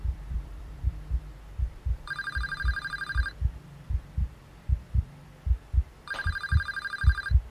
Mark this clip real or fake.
fake